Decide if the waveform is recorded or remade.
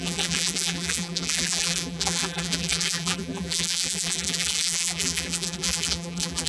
remade